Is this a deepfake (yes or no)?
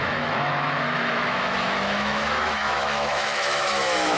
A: yes